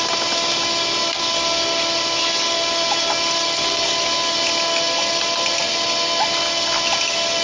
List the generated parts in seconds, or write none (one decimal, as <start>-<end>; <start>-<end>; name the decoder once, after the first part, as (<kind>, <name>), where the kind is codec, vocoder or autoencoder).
none